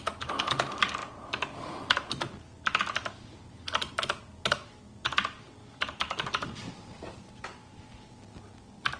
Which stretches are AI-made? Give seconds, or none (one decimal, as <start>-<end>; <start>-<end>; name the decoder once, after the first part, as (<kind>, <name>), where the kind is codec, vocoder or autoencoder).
6.6-7.9 (vocoder, BigVGAN v2)